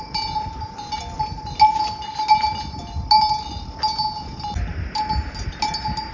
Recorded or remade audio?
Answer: recorded